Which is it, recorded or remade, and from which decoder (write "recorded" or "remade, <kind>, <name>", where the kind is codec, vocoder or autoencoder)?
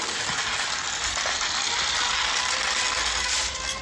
recorded